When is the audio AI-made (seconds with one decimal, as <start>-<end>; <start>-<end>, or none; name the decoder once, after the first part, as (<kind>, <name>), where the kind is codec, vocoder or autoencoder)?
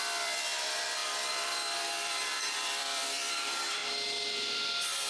0.0-3.8 (vocoder, BigVGAN v2)